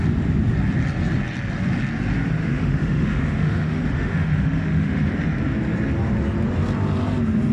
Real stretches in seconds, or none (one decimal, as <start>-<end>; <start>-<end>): 0.0-2.4; 5.1-7.5

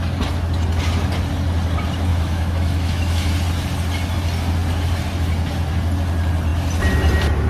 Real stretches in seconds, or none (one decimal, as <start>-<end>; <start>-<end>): 0.0-2.1; 3.3-7.5

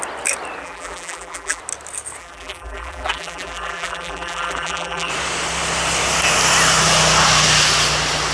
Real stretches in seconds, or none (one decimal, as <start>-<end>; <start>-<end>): 0.0-0.6; 1.6-2.2; 5.1-8.3

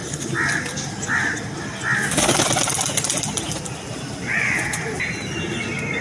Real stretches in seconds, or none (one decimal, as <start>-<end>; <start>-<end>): 0.0-4.2; 4.8-6.0

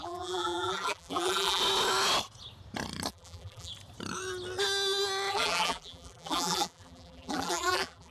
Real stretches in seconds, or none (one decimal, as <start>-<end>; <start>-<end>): 1.6-3.1; 3.7-5.3